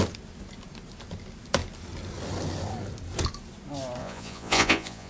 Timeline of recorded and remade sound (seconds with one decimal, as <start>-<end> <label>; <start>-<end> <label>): 0.0-4.0 recorded; 4.0-5.1 remade